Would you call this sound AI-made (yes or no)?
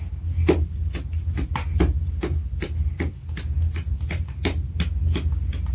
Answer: no